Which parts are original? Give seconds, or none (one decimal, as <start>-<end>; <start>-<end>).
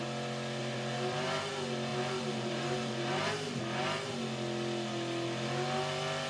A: 0.0-0.6; 1.5-1.9; 3.6-6.3